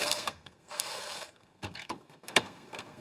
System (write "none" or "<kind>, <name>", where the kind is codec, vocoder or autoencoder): codec, SNAC